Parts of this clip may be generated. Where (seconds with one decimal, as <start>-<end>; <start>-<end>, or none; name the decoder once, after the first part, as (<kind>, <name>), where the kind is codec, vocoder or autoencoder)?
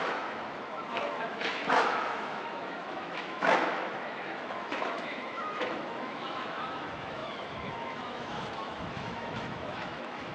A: 0.0-10.3 (autoencoder, DAC-VAE)